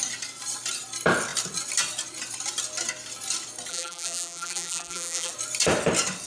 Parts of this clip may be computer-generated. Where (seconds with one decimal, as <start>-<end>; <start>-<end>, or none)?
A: 3.7-5.3